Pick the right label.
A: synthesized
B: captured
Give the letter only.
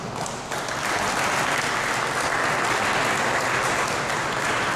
B